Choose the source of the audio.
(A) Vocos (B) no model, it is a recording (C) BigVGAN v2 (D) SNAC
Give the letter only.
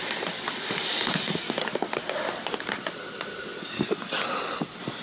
B